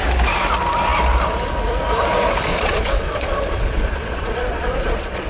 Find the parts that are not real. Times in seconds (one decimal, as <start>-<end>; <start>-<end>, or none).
2.5-5.3